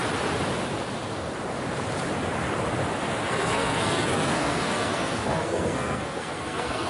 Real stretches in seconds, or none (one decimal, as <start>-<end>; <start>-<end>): 0.0-3.3